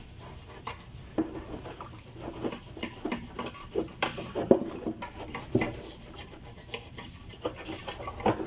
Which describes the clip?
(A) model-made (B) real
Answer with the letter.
B